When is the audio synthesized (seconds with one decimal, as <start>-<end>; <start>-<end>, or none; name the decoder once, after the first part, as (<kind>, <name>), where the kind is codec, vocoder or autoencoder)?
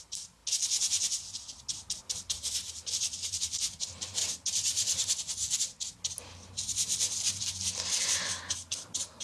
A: 0.0-0.4 (vocoder, BigVGAN v2); 2.0-4.2; 8.0-9.2